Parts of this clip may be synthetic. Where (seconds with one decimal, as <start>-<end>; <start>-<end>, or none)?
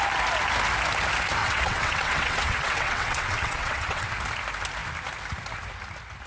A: 1.4-4.1